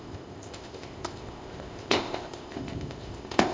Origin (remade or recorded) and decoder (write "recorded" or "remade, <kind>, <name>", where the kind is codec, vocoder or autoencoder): remade, codec, ZipCodec